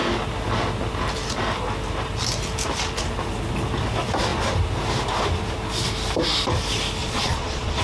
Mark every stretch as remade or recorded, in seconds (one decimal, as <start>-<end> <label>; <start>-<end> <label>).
0.0-7.0 recorded; 7.0-7.8 remade